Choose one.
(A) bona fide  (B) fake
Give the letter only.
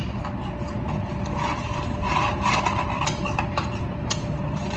A